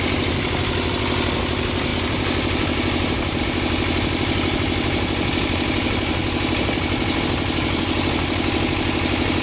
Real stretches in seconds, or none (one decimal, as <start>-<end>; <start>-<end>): 0.0-9.4